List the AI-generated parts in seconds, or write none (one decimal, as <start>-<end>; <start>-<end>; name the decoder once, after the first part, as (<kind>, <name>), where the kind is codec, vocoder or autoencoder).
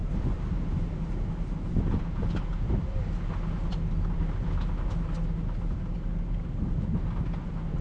none